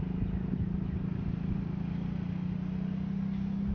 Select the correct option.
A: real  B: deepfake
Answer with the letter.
A